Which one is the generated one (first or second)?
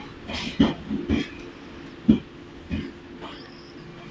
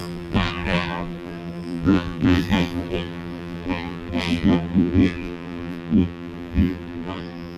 second